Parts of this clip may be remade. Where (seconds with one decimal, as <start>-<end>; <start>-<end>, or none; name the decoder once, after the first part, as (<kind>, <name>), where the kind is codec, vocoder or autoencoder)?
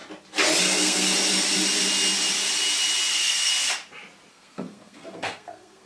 0.6-1.1 (codec, SNAC); 3.1-3.5; 4.3-5.9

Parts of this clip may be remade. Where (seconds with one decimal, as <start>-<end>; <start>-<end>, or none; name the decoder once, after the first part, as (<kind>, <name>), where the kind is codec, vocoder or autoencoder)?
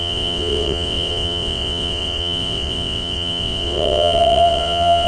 0.0-5.1 (vocoder, WaveNeXt)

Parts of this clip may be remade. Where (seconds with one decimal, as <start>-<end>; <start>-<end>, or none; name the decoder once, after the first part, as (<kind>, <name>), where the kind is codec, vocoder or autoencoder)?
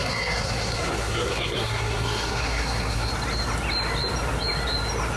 0.0-3.1 (codec, SNAC)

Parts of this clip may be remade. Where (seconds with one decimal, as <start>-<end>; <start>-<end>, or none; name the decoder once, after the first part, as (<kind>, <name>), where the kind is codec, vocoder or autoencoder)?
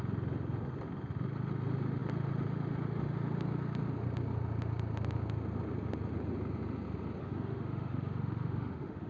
7.2-9.1 (autoencoder, DAC-VAE)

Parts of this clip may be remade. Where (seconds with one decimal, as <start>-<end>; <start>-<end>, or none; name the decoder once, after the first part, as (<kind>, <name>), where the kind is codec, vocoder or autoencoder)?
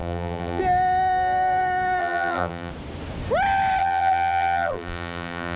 0.0-0.6 (vocoder, BigVGAN v2); 2.0-2.7; 3.8-5.6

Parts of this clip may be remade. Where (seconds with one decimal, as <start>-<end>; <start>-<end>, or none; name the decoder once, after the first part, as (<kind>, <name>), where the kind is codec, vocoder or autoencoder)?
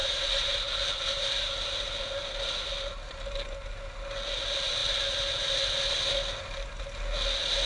0.0-0.5 (vocoder, BigVGAN v2)